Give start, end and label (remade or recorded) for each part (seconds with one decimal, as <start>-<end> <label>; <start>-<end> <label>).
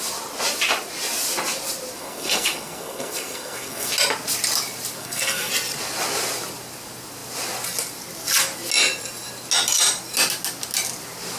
0.0-2.0 recorded; 2.0-3.9 remade; 3.9-5.0 recorded; 5.0-5.5 remade; 5.5-11.4 recorded